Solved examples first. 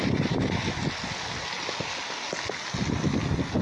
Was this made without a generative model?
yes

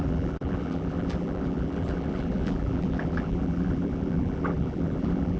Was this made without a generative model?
no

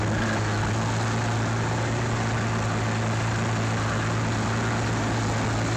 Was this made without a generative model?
yes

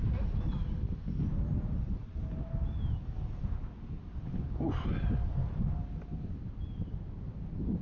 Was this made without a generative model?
yes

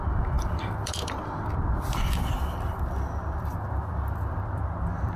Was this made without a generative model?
no